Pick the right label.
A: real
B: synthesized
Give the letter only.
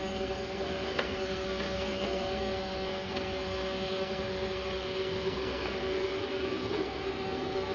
B